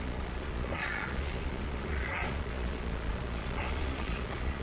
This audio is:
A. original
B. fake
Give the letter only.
B